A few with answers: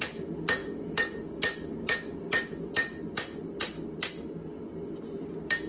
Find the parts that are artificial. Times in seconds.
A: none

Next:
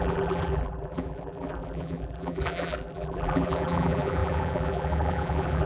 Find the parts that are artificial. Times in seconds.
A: 0.0-5.7

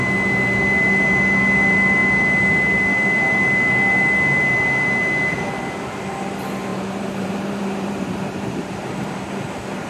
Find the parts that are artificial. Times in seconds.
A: 6.7-8.7